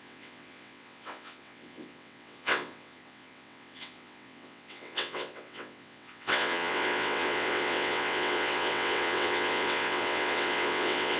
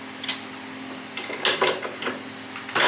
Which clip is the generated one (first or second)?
first